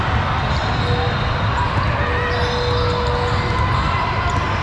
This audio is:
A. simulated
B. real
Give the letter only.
B